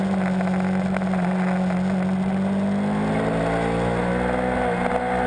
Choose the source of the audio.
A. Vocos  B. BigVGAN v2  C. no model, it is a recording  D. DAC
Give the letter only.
C